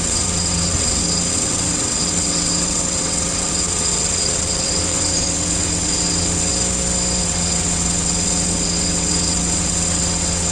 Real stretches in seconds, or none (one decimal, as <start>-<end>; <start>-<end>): 6.5-7.2